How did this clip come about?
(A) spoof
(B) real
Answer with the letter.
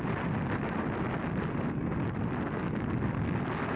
B